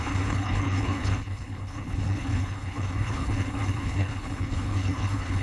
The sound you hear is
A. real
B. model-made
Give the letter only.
B